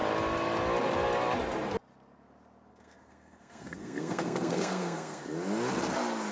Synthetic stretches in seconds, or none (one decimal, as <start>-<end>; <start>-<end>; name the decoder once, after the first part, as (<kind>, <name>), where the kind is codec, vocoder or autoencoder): 2.7-5.2 (codec, SNAC)